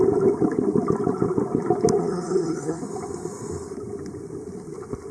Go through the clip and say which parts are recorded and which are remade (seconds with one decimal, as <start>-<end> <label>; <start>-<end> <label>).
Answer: 0.0-2.0 recorded; 2.0-2.8 remade; 2.8-5.1 recorded